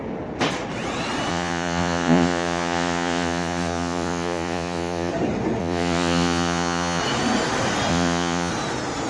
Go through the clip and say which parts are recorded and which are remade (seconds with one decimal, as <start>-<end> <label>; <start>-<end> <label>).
0.0-1.3 recorded; 1.3-5.1 remade; 5.1-5.6 recorded; 5.6-7.0 remade; 7.0-7.9 recorded; 7.9-8.5 remade; 8.5-9.1 recorded